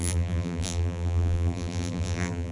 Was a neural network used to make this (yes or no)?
yes